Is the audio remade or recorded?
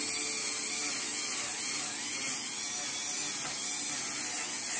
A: recorded